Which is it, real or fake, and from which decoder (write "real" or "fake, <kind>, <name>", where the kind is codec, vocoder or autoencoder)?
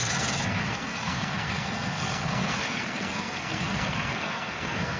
fake, codec, SNAC